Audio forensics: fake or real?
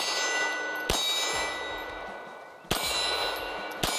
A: real